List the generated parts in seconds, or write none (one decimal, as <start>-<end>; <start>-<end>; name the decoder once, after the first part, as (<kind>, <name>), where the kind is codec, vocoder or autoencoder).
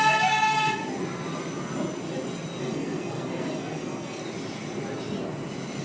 0.0-0.8 (codec, SNAC); 2.6-4.2